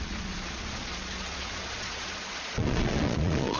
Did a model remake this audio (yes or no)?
yes